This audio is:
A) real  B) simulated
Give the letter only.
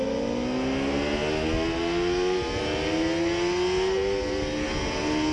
A